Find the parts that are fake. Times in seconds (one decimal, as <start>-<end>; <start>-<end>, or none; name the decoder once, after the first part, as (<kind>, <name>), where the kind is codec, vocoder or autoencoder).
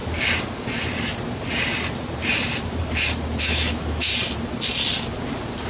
3.4-4.1 (autoencoder, DAC-VAE)